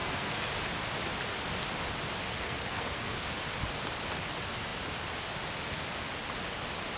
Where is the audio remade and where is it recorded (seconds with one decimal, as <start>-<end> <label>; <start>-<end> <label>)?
0.0-0.5 remade; 0.5-2.3 recorded; 2.3-3.3 remade; 3.3-7.0 recorded